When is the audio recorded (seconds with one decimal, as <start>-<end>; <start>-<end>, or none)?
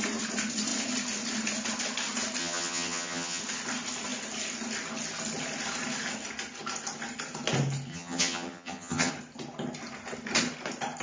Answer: 0.0-2.4; 3.4-7.9; 9.1-11.0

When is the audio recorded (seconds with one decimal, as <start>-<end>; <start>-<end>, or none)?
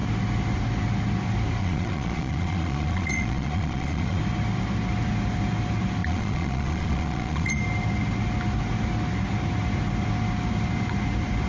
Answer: 0.0-1.6; 4.2-6.0; 7.6-11.5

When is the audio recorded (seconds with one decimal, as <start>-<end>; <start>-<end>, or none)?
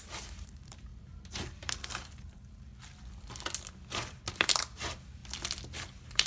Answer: 0.9-1.6; 2.7-4.3; 5.2-5.8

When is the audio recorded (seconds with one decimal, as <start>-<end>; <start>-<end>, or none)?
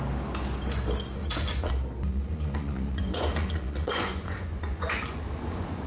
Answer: 0.0-1.2; 1.7-2.1